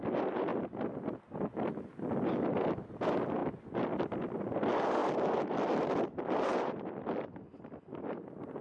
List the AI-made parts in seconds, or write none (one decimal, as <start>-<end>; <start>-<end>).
none